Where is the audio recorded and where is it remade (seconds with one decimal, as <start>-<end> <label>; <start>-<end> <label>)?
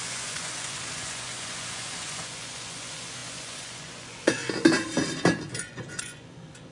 0.0-4.4 remade; 4.4-5.5 recorded; 5.5-6.7 remade